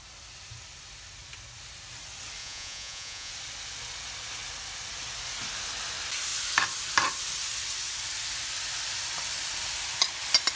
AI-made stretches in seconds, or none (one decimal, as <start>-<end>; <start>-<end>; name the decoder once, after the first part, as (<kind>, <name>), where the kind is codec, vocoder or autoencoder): 2.4-3.3 (vocoder, Vocos)

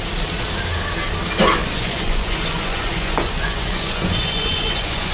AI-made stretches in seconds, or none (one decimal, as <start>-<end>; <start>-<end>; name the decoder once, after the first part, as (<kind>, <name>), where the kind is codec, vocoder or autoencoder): 1.6-5.1 (vocoder, Vocos)

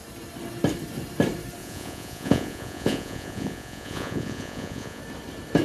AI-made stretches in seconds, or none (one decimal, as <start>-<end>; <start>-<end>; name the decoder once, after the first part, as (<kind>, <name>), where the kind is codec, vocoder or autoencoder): 1.6-5.0 (vocoder, Vocos)

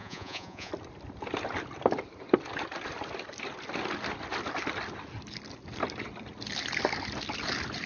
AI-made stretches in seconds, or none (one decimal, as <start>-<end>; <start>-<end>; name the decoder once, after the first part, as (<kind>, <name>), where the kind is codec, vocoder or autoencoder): 0.0-0.7 (vocoder, Vocos)

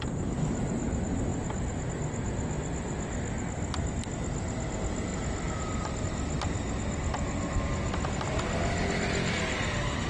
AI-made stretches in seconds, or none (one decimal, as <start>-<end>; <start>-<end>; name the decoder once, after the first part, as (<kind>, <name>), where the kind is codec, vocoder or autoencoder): none